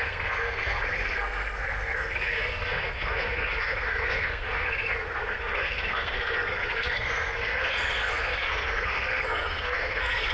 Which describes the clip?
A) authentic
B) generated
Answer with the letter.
B